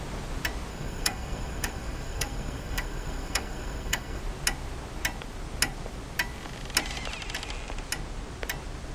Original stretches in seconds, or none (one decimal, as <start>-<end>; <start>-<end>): 0.0-0.7; 4.2-8.9